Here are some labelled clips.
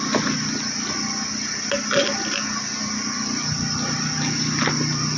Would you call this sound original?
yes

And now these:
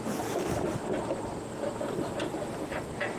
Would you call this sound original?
yes